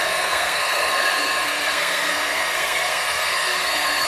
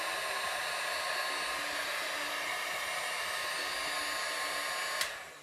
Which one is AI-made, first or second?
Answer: first